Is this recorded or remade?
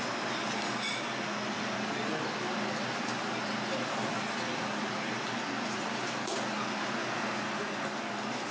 recorded